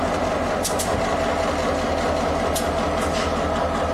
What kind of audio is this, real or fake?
real